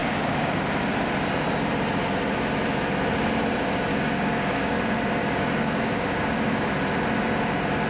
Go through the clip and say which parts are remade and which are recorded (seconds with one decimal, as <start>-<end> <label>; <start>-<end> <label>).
0.0-0.7 remade; 0.7-3.9 recorded; 3.9-4.8 remade; 4.8-5.2 recorded; 5.2-6.7 remade; 6.7-7.9 recorded